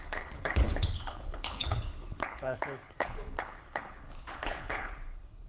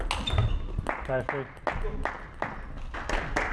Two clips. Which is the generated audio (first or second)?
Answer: first